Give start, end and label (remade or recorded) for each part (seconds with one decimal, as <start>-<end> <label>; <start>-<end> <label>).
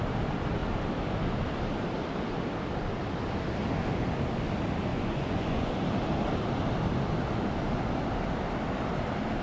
0.0-4.9 recorded; 4.9-5.7 remade; 5.7-9.4 recorded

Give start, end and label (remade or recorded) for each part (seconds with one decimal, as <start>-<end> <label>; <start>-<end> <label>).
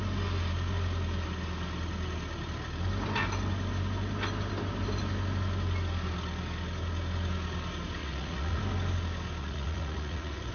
0.0-8.0 recorded; 8.0-8.6 remade; 8.6-9.4 recorded; 9.4-10.5 remade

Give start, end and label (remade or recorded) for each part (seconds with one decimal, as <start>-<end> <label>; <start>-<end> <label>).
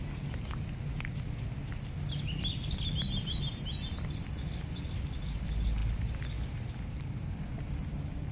0.0-8.3 recorded